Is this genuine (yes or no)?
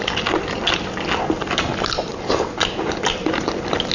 yes